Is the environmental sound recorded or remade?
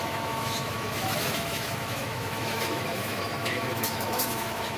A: remade